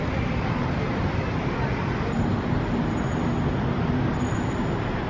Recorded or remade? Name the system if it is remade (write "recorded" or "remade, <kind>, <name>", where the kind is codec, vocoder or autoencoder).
recorded